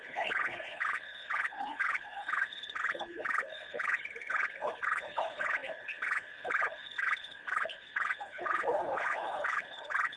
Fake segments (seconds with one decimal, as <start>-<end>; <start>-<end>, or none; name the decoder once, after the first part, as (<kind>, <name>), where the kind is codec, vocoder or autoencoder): 0.0-10.2 (codec, HILCodec)